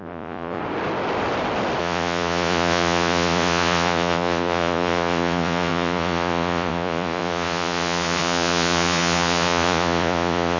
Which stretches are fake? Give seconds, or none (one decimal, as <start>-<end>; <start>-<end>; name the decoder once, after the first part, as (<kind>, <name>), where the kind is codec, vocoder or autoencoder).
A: 0.0-0.6 (vocoder, Vocos); 1.8-10.6